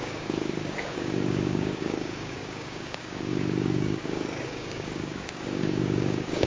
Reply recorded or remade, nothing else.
remade